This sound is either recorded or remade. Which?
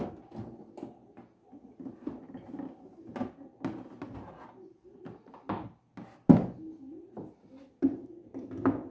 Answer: recorded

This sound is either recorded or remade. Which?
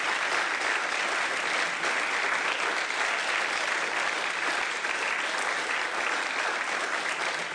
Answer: recorded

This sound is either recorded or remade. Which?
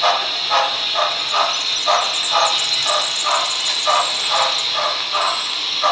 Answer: recorded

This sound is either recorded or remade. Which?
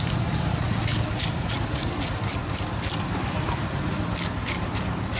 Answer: recorded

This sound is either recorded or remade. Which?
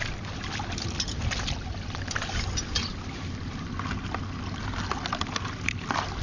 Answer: recorded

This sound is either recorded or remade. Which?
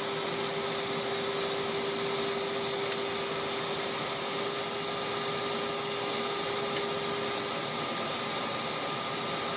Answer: recorded